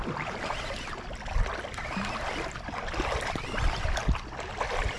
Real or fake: real